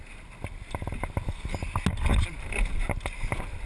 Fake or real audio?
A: real